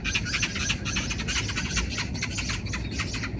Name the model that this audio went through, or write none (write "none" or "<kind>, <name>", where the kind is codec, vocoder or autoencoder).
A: none